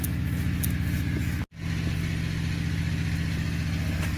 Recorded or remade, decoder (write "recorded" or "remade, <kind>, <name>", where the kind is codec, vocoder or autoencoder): recorded